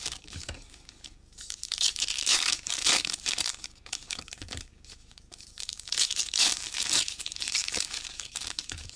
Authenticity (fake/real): fake